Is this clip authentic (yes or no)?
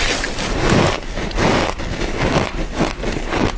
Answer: yes